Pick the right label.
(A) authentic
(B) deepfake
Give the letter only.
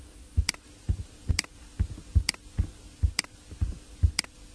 B